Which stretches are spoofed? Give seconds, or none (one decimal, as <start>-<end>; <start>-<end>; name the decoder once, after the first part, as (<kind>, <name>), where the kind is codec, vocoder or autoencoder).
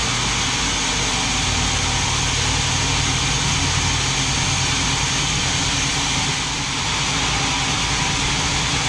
none